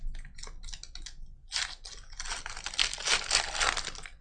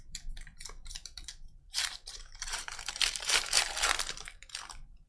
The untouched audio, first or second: first